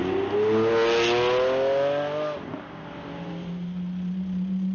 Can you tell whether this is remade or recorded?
recorded